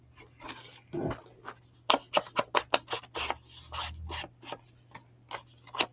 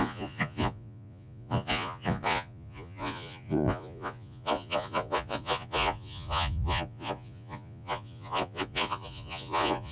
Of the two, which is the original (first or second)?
first